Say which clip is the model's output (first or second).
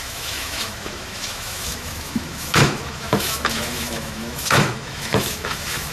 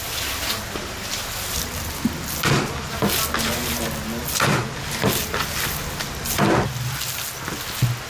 first